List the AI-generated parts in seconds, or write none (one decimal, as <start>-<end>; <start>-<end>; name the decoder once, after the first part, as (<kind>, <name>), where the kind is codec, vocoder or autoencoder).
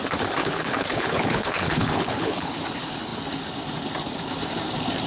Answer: 0.4-2.5 (codec, HILCodec)